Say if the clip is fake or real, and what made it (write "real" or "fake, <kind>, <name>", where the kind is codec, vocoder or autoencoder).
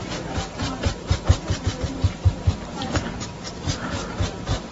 fake, vocoder, BigVGAN v2